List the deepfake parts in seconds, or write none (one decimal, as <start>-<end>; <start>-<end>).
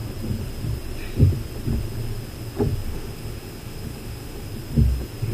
2.9-4.5